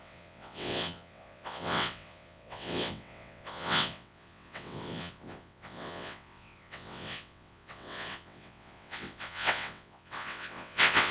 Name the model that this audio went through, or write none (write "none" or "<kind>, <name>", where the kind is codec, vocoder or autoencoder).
vocoder, WaveNeXt